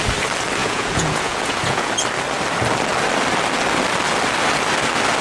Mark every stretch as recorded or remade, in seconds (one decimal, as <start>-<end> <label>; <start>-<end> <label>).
0.0-0.6 recorded; 0.6-1.9 remade; 1.9-5.2 recorded